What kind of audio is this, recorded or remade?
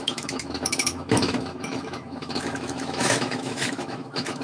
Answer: remade